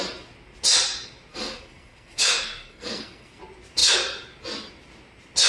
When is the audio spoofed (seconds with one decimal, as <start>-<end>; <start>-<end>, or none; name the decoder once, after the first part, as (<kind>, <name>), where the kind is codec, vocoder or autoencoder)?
1.3-3.4 (codec, SNAC)